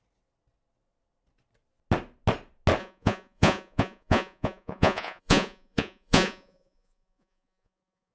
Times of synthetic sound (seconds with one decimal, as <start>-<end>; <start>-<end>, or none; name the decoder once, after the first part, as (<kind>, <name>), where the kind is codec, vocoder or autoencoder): 2.8-8.1 (vocoder, Vocos)